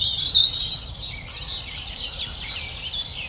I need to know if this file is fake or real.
fake